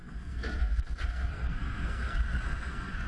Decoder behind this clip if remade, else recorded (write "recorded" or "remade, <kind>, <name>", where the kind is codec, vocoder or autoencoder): remade, codec, SNAC